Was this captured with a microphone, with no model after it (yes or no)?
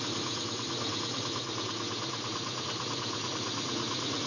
no